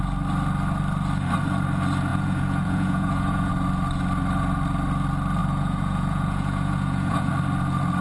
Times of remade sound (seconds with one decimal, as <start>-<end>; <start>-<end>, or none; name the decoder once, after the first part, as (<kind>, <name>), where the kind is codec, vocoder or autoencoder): 2.1-3.5 (vocoder, Vocos); 5.4-7.3